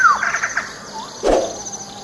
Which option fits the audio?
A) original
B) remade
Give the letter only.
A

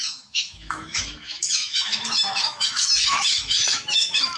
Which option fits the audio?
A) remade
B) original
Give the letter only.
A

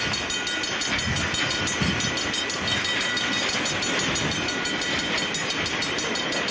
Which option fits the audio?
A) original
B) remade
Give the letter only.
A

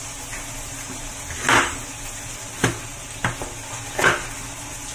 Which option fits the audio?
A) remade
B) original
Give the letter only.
B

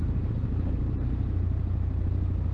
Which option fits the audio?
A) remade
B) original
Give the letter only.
B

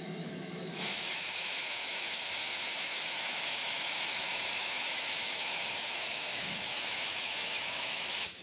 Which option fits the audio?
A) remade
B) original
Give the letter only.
A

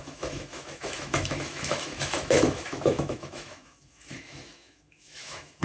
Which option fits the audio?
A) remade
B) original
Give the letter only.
A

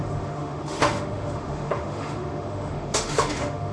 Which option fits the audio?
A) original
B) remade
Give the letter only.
B